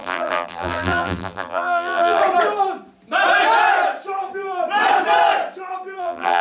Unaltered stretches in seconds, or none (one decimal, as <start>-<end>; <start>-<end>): 2.2-6.0